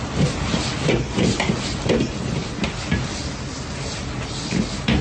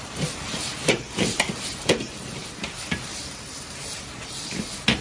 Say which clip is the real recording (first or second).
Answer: first